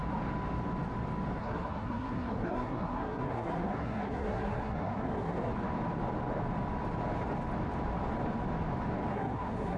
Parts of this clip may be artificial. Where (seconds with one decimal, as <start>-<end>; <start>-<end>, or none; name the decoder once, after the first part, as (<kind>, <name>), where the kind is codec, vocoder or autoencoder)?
1.4-5.5 (codec, SNAC); 9.1-9.8

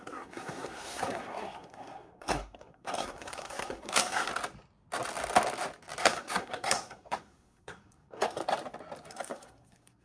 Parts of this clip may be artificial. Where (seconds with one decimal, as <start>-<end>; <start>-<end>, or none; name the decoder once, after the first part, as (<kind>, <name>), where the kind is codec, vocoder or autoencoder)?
0.0-4.3 (codec, SNAC); 6.0-8.4; 9.1-10.0

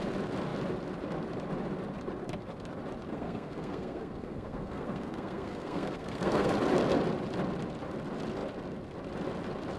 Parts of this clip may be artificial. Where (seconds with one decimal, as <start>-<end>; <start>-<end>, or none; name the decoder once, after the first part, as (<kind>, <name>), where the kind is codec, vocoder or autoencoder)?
3.1-6.5 (codec, SNAC)

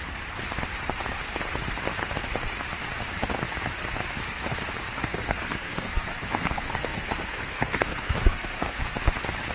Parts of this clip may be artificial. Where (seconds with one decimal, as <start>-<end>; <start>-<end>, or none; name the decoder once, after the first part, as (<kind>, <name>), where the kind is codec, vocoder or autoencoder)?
5.0-8.8 (codec, SNAC)